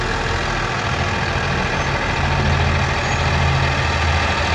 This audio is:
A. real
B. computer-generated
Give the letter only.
A